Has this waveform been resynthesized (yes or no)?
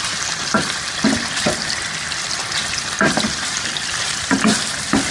yes